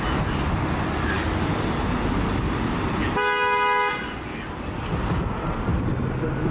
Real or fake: real